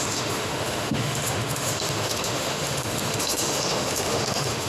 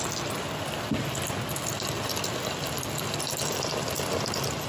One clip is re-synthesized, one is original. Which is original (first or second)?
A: second